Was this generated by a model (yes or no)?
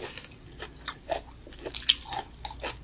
no